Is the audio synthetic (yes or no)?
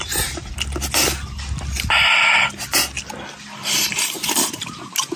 no